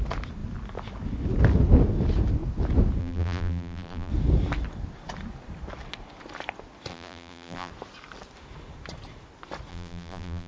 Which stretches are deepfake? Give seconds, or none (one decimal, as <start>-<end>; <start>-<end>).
3.0-4.1; 6.9-7.7; 9.7-10.5